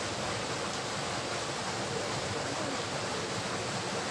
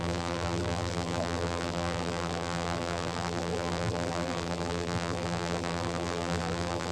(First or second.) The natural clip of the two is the first